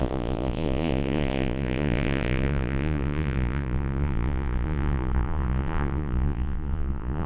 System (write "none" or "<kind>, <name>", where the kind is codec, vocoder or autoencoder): vocoder, Vocos